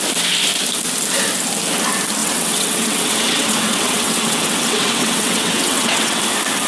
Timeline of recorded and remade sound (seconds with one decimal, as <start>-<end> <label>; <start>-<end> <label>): 0.0-2.2 recorded; 2.2-6.2 remade; 6.2-6.7 recorded